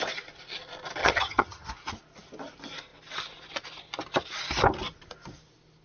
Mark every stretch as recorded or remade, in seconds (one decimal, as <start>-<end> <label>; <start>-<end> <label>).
0.0-1.0 recorded; 1.0-1.7 remade; 1.7-5.8 recorded